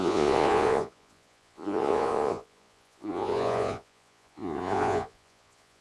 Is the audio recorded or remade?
remade